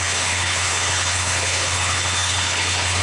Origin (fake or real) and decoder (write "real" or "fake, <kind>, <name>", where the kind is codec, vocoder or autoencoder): fake, codec, HILCodec